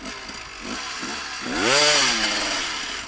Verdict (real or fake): real